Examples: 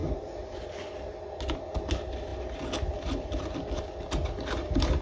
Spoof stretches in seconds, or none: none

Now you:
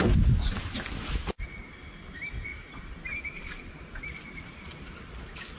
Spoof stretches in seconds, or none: none

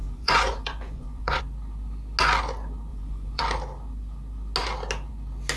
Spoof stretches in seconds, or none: 0.0-1.4 (vocoder, Vocos); 2.9-3.4

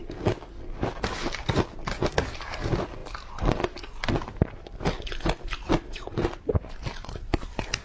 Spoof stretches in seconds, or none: none

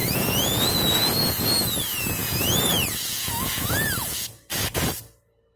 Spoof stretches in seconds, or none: 0.0-4.5 (vocoder, Vocos)

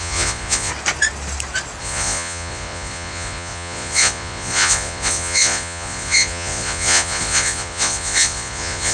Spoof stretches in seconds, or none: 0.0-0.7 (vocoder, Vocos); 1.8-8.9

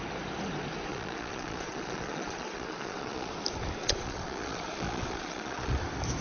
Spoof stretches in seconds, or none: 0.9-3.3 (vocoder, Vocos); 3.8-5.8

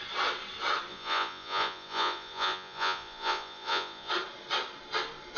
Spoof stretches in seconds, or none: 0.9-4.1 (vocoder, Vocos)